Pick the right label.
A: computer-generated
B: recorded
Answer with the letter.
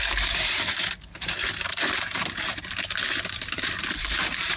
A